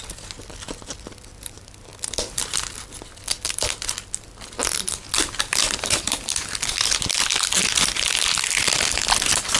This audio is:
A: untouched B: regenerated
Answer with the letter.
A